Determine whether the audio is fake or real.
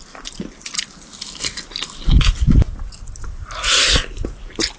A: real